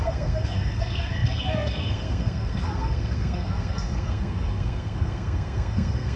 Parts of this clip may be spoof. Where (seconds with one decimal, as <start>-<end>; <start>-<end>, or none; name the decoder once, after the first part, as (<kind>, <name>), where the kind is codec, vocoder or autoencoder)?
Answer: 0.0-6.2 (codec, SNAC)